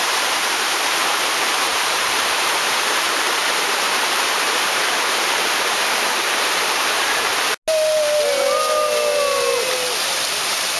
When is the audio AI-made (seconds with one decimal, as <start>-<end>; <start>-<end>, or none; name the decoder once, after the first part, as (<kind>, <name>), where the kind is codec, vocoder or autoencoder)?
0.0-7.3 (vocoder, BigVGAN v2); 10.0-10.8